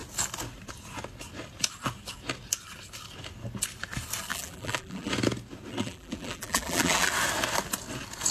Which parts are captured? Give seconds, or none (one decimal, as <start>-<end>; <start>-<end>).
0.0-4.3; 5.1-5.7; 7.1-8.3